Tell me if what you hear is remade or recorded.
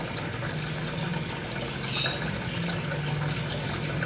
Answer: recorded